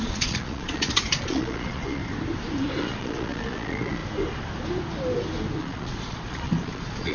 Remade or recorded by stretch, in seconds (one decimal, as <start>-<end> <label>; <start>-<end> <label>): 0.0-2.0 remade; 2.0-2.8 recorded; 2.8-4.0 remade; 4.0-5.6 recorded; 5.6-7.1 remade